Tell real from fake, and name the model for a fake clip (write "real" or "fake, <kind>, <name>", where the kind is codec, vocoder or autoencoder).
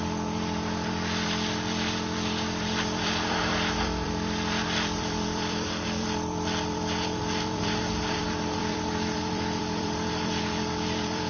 fake, vocoder, BigVGAN v2